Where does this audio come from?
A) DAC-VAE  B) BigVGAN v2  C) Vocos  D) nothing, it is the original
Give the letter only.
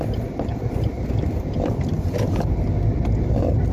D